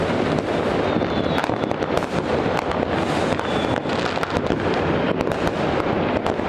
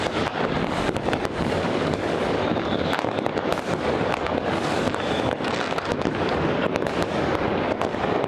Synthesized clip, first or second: second